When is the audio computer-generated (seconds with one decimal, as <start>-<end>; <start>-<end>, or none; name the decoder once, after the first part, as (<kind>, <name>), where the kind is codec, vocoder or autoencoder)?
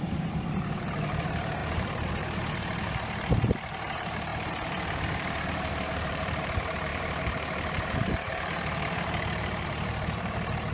0.0-10.7 (vocoder, BigVGAN v2)